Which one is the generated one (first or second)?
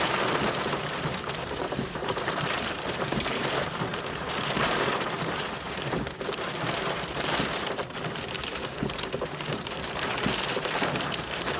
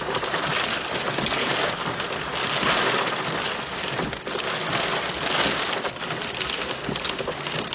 first